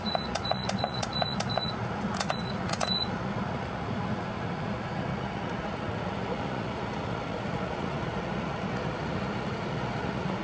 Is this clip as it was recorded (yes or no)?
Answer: no